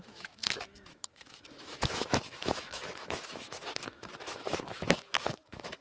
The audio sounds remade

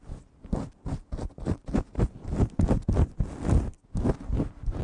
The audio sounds recorded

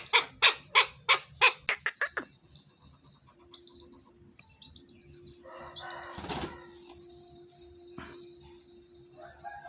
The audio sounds recorded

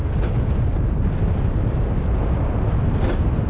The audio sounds recorded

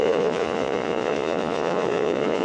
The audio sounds remade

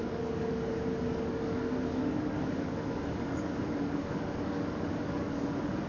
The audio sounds remade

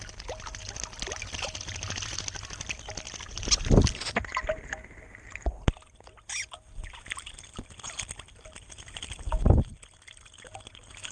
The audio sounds recorded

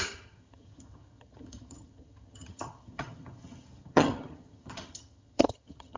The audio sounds remade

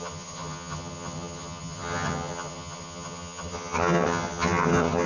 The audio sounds remade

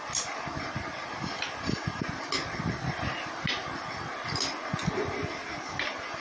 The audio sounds recorded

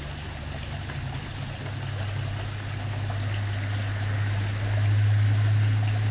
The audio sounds recorded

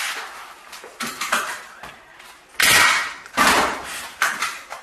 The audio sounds recorded